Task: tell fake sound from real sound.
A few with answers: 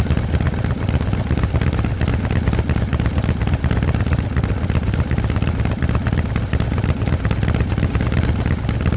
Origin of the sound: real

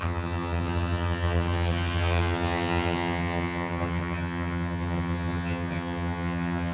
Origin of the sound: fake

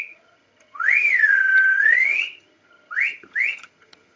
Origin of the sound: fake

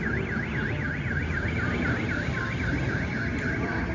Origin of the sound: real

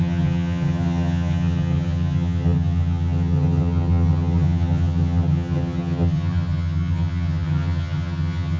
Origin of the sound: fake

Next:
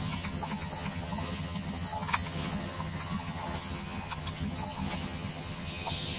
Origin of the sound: fake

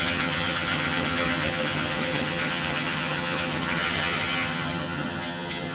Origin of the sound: fake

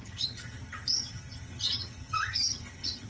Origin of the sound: fake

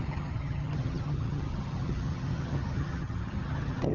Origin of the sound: fake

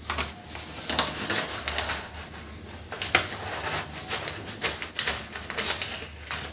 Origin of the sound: real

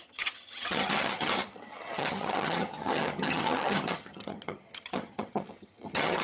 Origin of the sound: fake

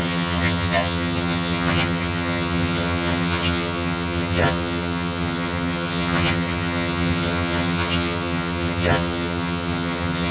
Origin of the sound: fake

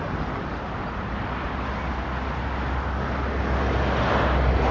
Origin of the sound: real